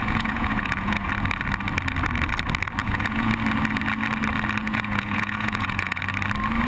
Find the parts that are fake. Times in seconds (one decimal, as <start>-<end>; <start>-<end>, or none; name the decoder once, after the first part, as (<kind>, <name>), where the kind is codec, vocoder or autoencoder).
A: 0.0-1.1 (vocoder, Vocos); 2.8-3.3; 4.6-6.0